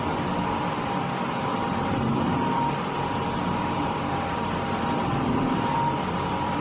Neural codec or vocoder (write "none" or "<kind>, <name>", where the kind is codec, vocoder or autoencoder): vocoder, BigVGAN v2